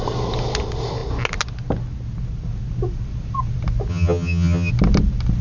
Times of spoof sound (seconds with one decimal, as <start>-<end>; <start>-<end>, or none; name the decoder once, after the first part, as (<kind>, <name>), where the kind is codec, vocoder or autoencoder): 3.9-4.7 (vocoder, HiFi-GAN)